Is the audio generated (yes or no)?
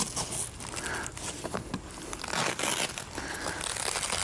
no